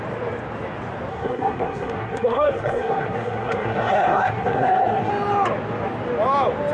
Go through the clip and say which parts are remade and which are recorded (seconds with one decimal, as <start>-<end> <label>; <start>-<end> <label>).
0.0-1.1 recorded; 1.1-5.1 remade; 5.1-6.7 recorded